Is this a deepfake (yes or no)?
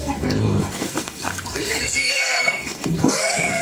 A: yes